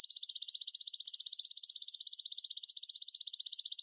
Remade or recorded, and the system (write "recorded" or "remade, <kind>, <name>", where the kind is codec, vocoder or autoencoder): recorded